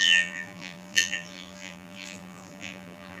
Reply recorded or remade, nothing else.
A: remade